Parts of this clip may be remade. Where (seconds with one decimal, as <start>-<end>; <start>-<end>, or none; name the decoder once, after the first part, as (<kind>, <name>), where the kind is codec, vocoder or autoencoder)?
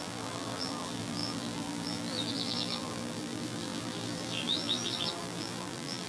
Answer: 0.0-6.1 (vocoder, BigVGAN v2)